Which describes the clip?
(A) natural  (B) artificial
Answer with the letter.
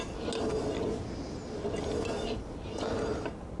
A